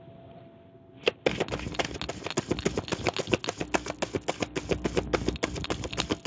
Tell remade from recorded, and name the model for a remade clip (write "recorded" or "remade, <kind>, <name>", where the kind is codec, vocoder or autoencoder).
recorded